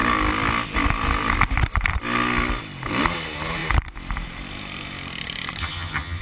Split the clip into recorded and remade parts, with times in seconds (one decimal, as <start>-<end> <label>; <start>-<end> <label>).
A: 0.0-5.6 recorded; 5.6-6.2 remade

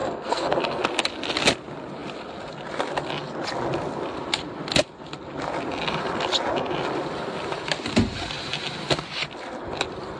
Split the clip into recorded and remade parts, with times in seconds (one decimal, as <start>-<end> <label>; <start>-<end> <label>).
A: 0.0-0.8 remade; 0.8-10.2 recorded

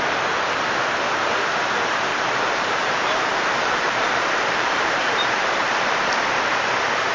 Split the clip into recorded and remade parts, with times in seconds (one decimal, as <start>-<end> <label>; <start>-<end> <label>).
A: 0.0-2.1 recorded; 2.1-6.4 remade; 6.4-7.1 recorded